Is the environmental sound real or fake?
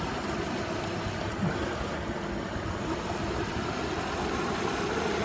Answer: real